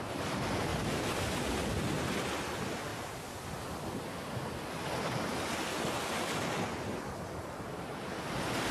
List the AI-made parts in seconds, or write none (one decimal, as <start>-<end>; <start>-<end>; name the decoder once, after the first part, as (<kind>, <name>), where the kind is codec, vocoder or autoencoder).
none